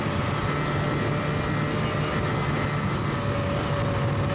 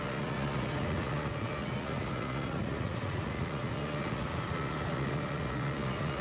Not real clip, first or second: second